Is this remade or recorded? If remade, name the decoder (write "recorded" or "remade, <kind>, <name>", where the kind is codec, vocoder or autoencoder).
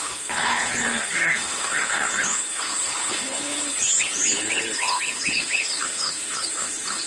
remade, codec, HILCodec